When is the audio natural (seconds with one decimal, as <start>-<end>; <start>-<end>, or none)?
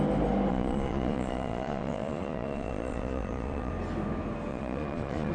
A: 0.0-0.5; 3.7-4.5